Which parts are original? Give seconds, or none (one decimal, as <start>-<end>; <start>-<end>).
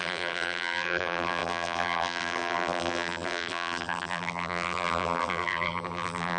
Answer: none